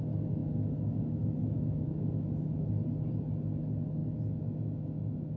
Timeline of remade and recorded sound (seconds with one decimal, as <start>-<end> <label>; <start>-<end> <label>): 0.0-0.4 recorded; 0.4-2.7 remade; 2.7-5.4 recorded